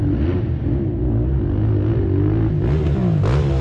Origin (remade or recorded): recorded